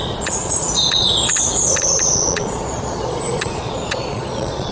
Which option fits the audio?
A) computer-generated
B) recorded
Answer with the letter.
A